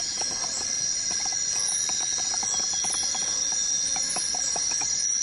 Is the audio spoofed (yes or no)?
no